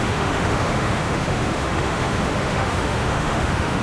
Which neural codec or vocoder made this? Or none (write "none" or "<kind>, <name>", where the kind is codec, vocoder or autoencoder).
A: autoencoder, DAC-VAE